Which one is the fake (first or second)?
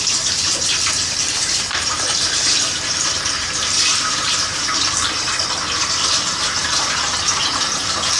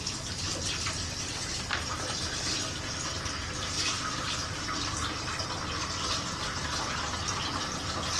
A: first